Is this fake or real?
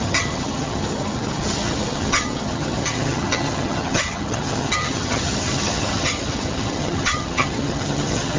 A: fake